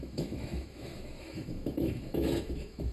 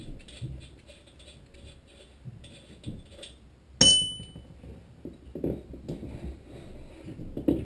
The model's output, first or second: first